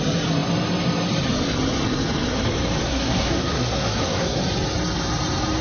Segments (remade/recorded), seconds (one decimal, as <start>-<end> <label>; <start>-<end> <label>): 0.0-2.8 recorded; 2.8-4.4 remade; 4.4-5.6 recorded